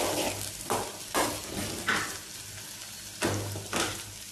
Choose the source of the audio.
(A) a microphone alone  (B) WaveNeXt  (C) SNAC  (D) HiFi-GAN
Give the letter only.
A